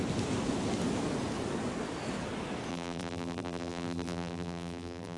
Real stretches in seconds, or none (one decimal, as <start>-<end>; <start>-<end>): 0.0-2.7